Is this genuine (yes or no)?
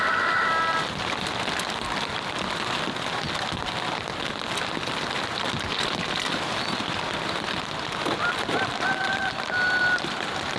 yes